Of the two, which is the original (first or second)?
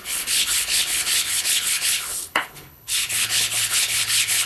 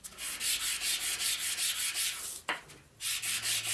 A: second